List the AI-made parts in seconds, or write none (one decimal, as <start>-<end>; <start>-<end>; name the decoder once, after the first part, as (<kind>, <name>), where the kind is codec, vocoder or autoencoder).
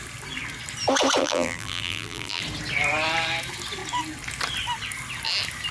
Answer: 1.2-2.4 (vocoder, BigVGAN v2)